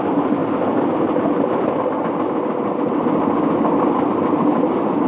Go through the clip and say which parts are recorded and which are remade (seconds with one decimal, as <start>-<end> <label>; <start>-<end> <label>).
0.0-5.1 recorded